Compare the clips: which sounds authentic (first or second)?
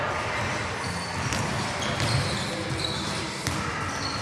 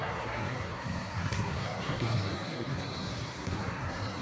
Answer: first